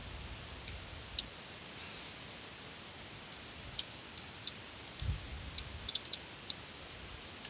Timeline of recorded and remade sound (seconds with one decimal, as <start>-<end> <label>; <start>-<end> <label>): 0.0-7.5 recorded